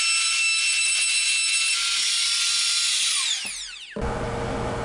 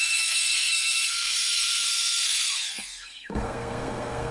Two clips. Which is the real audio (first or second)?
first